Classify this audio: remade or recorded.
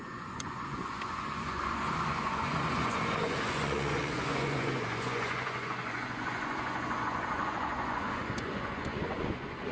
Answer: remade